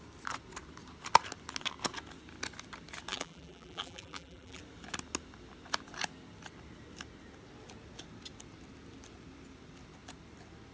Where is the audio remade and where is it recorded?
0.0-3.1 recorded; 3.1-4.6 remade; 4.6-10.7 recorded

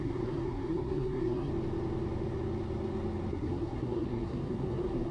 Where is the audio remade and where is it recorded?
0.0-1.5 remade; 1.5-3.3 recorded; 3.3-5.1 remade

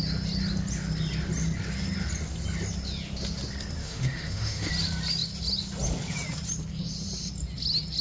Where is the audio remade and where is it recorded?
0.0-3.8 recorded; 3.8-4.7 remade; 4.7-8.0 recorded

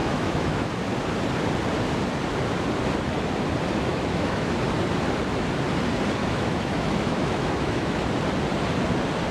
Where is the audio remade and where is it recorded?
0.0-0.7 remade; 0.7-3.9 recorded; 3.9-4.5 remade; 4.5-6.2 recorded; 6.2-8.1 remade; 8.1-9.3 recorded

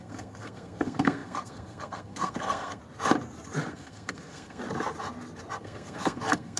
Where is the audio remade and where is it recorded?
0.0-2.8 remade; 2.8-3.7 recorded; 3.7-4.6 remade; 4.6-5.6 recorded; 5.6-6.6 remade

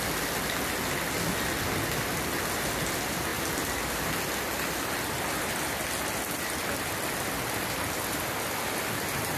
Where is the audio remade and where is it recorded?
0.0-9.4 recorded

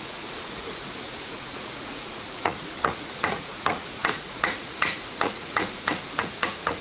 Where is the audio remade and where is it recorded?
0.0-6.8 remade

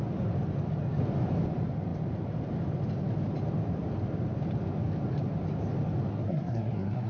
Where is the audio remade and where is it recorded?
0.0-6.1 recorded; 6.1-7.1 remade